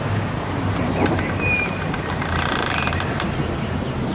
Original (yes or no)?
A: no